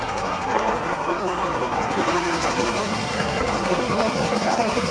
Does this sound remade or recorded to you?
remade